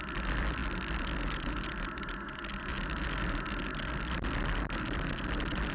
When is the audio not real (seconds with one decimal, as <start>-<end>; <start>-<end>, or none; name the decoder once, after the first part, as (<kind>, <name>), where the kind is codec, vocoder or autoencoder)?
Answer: none